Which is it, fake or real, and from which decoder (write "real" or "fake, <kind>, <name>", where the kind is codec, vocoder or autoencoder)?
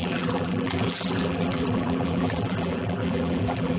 fake, vocoder, BigVGAN v2